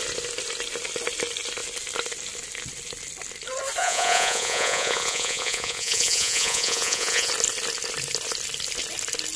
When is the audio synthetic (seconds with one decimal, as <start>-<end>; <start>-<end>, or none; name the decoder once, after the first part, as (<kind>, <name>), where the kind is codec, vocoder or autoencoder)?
3.8-7.3 (vocoder, Vocos)